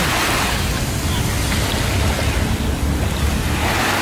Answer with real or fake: real